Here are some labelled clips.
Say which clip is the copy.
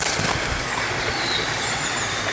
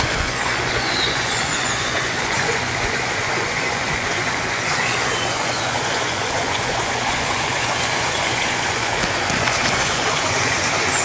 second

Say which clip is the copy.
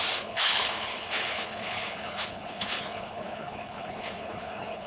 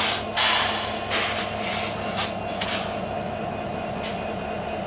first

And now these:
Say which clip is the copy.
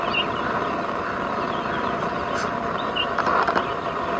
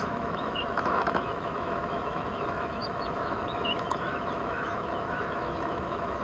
second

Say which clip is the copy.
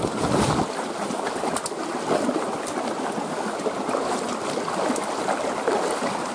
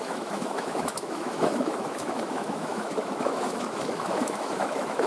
second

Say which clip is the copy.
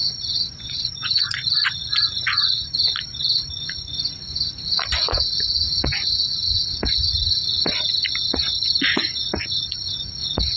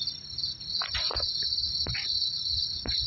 first